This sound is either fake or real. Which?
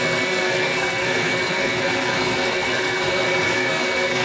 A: fake